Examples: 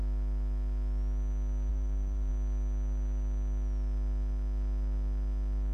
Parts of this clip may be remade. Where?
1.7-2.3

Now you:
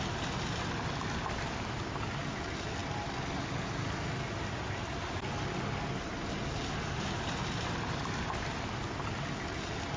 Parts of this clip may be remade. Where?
none

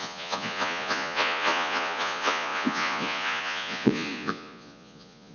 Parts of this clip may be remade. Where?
0.0-5.3

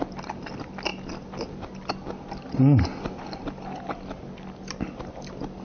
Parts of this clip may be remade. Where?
none